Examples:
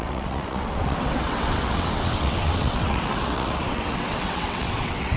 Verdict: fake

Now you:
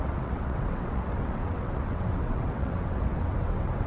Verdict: fake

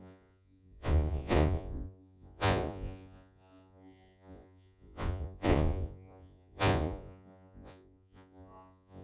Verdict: fake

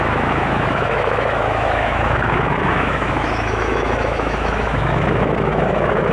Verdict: fake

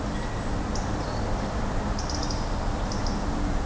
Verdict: real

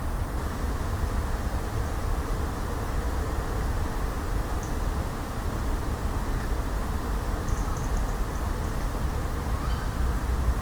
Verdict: real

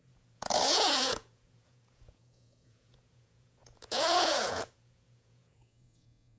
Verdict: fake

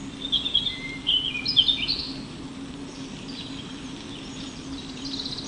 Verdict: real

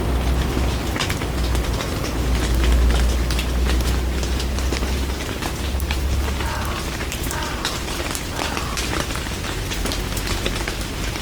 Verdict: real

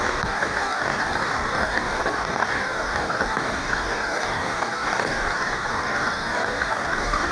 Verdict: fake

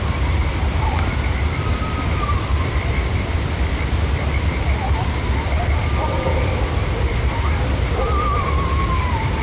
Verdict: fake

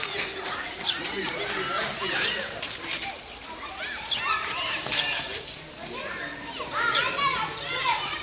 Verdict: real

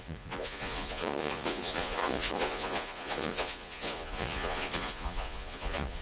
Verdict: fake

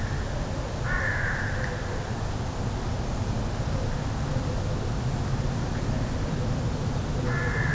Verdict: real